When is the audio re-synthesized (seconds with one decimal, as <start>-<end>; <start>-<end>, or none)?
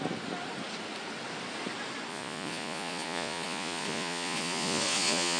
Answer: 2.1-5.4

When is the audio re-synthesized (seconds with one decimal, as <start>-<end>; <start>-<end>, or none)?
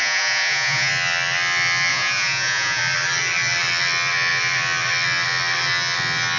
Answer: 0.0-0.9; 1.9-2.8